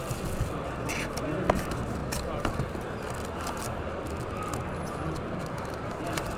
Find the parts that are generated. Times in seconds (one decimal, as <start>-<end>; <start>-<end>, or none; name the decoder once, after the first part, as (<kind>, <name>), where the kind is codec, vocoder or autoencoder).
none